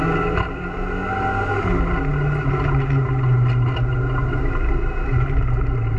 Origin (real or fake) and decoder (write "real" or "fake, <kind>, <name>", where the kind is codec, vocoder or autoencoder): real